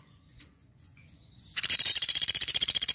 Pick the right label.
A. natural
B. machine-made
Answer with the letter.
B